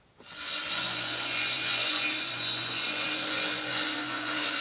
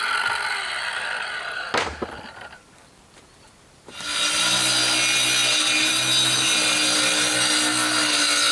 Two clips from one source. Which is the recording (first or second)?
second